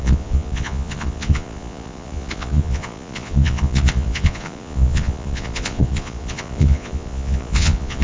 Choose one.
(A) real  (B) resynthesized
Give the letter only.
B